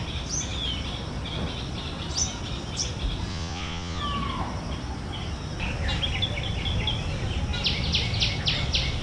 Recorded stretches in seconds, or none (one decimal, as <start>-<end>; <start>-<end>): 0.0-3.3; 4.0-9.0